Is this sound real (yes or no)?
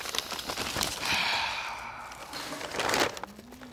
yes